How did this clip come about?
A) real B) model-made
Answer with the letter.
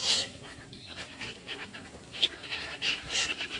B